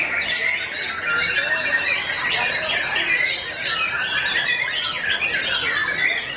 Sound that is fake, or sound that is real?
real